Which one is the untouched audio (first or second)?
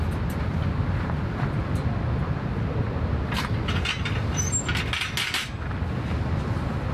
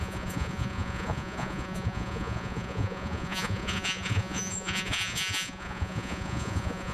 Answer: first